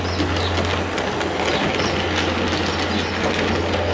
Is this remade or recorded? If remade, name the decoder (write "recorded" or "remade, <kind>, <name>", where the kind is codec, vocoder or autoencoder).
recorded